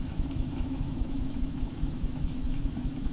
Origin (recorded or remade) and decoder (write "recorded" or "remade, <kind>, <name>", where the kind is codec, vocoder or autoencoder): remade, autoencoder, DAC-VAE